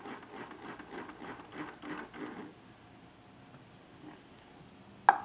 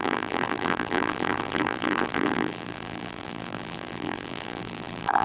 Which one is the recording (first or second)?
first